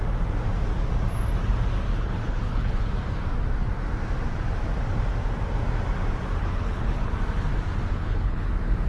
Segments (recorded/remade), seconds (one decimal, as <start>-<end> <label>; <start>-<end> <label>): 0.0-1.9 recorded; 1.9-2.9 remade; 2.9-6.4 recorded; 6.4-7.1 remade; 7.1-7.9 recorded; 7.9-8.5 remade; 8.5-8.9 recorded